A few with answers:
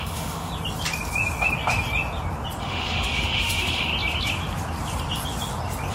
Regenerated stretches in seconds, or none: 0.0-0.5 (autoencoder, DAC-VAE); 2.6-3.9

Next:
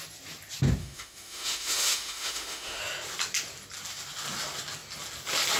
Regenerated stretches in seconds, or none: 0.8-2.8 (autoencoder, DAC-VAE)

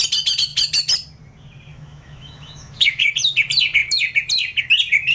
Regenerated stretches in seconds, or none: 1.7-3.1 (autoencoder, DAC-VAE)

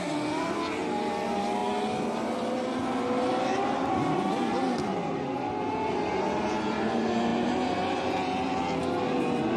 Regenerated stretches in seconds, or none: none

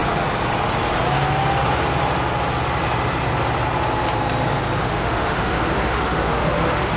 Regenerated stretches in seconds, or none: 4.8-7.0 (autoencoder, DAC-VAE)

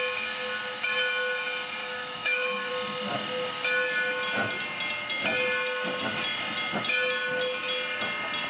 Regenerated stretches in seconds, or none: 1.8-2.7 (autoencoder, DAC-VAE)

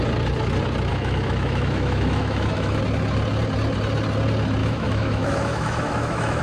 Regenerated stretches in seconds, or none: 0.9-2.8 (autoencoder, DAC-VAE); 4.6-6.4